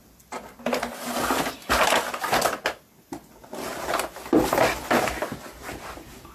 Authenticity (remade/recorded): recorded